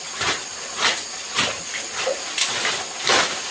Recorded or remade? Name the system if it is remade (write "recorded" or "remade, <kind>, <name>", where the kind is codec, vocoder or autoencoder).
recorded